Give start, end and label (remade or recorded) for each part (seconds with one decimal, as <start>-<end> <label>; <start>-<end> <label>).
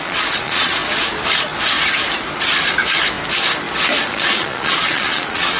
0.0-0.7 remade; 0.7-4.1 recorded; 4.1-5.6 remade